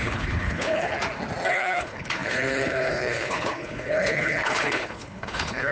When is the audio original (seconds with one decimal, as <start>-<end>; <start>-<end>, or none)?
0.9-1.5